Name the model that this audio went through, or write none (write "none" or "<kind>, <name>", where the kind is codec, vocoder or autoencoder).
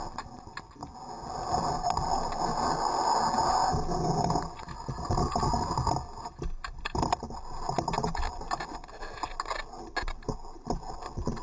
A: none